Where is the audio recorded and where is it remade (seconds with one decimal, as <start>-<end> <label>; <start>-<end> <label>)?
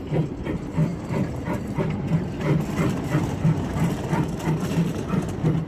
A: 0.0-5.7 remade